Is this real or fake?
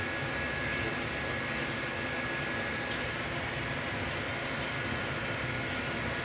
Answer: real